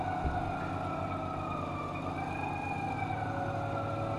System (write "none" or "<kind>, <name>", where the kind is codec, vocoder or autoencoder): none